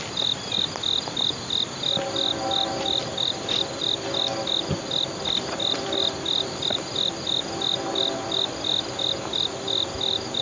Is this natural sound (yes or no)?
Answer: yes